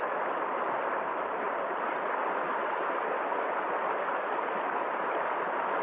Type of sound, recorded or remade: recorded